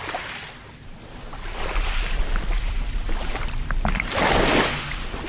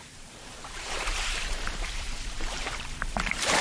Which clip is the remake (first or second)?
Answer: second